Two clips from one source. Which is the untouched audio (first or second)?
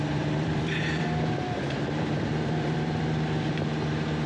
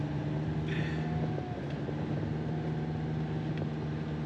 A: second